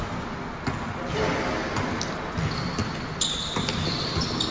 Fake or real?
real